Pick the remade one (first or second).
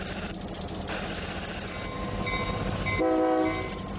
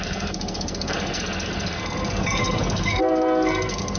second